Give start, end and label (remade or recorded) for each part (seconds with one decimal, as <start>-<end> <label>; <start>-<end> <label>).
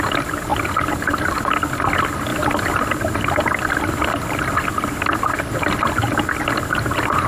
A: 0.0-7.3 recorded